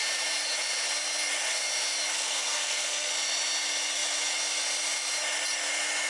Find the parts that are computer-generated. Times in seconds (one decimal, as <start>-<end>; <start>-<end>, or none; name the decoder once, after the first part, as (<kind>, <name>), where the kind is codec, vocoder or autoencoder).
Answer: 2.1-3.1 (codec, SNAC)